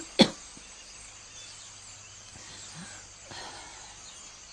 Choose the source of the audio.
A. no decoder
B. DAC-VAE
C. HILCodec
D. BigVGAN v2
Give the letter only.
A